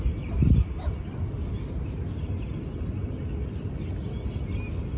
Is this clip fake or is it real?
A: real